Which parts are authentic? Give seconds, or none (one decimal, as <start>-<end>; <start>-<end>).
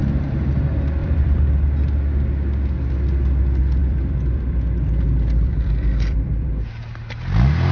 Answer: 0.0-1.0; 1.6-3.8; 6.7-7.7